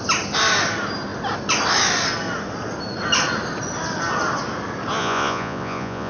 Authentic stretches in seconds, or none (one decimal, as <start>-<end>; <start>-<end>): 0.0-5.0